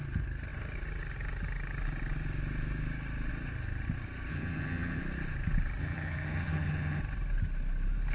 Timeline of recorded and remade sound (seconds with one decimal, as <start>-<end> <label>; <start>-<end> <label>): 0.0-4.3 recorded; 4.3-5.0 remade; 5.0-5.8 recorded; 5.8-7.0 remade; 7.0-8.1 recorded